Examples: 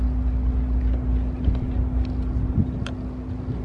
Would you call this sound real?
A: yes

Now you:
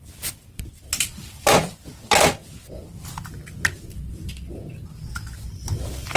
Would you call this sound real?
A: yes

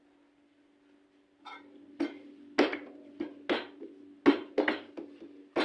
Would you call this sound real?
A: yes